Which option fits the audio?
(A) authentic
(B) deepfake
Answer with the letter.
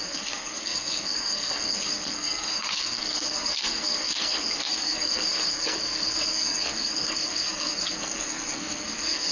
B